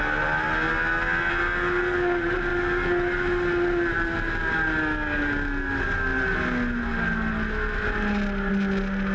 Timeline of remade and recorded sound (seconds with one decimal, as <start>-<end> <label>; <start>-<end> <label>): 0.0-9.1 recorded